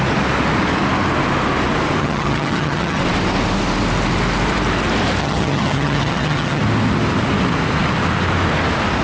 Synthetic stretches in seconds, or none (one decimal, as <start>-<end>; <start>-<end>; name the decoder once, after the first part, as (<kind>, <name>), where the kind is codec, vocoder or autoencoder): 2.0-3.0 (vocoder, HiFi-GAN); 5.2-6.6